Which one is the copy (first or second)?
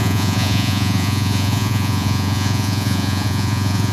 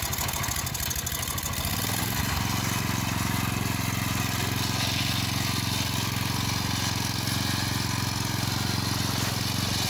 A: first